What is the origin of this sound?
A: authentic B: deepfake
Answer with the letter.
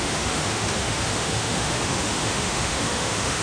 B